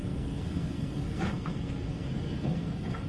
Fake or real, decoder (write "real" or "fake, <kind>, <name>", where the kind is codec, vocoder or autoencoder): fake, codec, SNAC